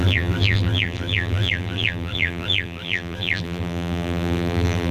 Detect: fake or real fake